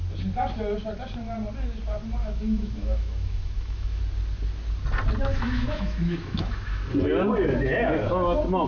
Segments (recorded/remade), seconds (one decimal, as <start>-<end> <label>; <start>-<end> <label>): 0.0-2.2 recorded; 2.2-4.0 remade; 4.0-5.3 recorded; 5.3-6.8 remade; 6.8-8.7 recorded